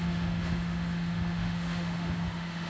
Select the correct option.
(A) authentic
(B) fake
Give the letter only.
B